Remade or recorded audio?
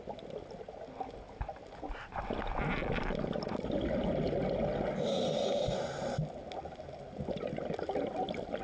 recorded